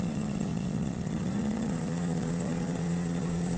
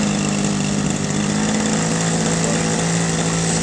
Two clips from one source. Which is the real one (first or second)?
second